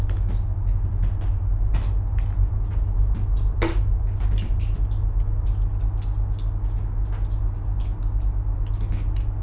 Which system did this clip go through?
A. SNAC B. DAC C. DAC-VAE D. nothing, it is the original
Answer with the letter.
D